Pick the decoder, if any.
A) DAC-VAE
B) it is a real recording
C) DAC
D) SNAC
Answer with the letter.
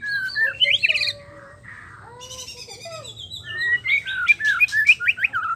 B